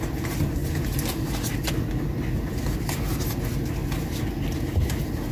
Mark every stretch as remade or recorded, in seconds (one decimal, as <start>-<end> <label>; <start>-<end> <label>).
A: 0.0-5.3 recorded